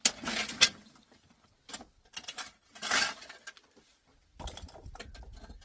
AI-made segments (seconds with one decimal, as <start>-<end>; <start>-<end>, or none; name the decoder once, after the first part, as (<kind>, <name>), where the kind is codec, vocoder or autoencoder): none